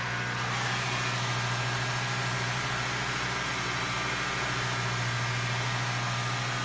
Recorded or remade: recorded